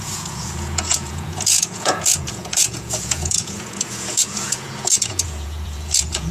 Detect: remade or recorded remade